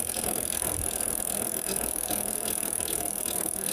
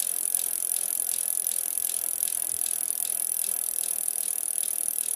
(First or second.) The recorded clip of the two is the second